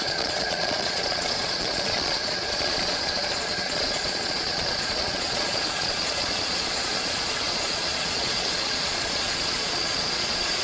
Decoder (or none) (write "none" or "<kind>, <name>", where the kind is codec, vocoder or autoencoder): vocoder, Vocos